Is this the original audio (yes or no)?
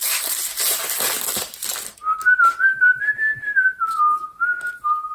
yes